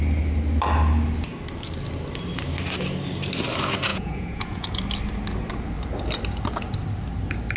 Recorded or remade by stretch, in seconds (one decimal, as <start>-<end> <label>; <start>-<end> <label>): 0.0-3.9 recorded; 3.9-4.8 remade; 4.8-7.6 recorded